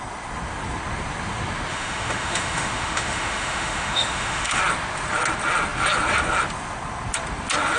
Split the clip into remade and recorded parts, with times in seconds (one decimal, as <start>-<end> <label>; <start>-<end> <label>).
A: 0.0-1.7 recorded; 1.7-4.6 remade; 4.6-7.8 recorded